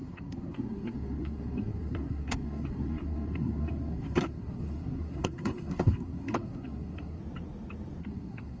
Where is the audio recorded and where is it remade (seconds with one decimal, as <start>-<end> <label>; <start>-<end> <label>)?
0.0-7.2 remade; 7.2-8.0 recorded; 8.0-8.6 remade